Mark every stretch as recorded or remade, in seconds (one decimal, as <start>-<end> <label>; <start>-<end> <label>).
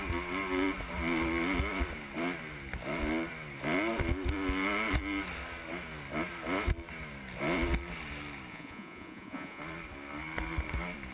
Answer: 0.0-8.5 recorded; 8.5-9.6 remade; 9.6-11.1 recorded